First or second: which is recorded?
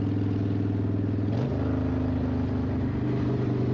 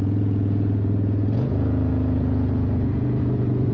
first